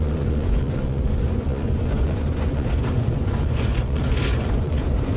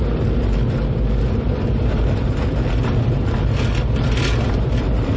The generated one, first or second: first